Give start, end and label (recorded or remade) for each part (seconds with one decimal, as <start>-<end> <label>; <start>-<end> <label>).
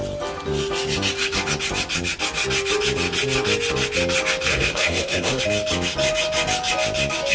0.0-4.5 recorded; 4.5-5.4 remade; 5.4-7.3 recorded